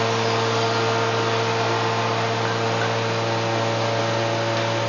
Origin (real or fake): real